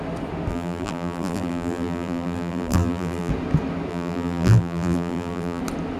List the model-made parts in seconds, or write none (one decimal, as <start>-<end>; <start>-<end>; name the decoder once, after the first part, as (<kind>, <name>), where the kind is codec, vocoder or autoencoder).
0.5-3.3 (vocoder, BigVGAN v2); 3.9-5.6